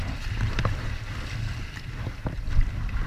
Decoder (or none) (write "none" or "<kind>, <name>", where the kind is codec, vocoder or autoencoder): none